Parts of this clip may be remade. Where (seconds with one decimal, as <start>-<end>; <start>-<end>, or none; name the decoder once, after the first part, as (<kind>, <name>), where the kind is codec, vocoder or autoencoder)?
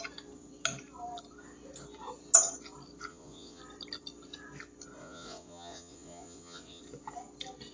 3.1-3.6 (vocoder, Vocos); 5.0-6.8